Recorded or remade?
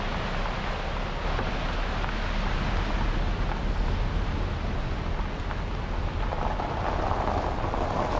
recorded